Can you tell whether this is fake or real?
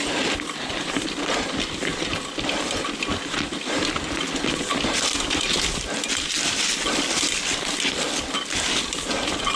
real